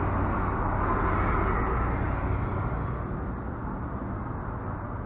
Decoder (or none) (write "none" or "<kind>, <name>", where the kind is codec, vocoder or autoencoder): none